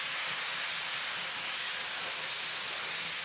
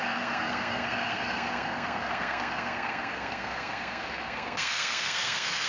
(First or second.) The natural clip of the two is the first